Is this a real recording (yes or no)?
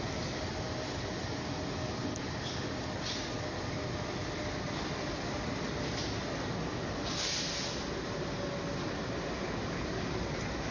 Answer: yes